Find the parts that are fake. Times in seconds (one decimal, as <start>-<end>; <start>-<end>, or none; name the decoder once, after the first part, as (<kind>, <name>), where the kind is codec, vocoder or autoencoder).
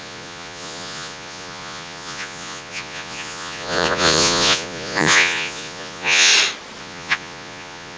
0.0-6.3 (vocoder, Vocos); 6.8-8.0